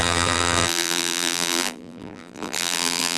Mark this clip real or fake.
fake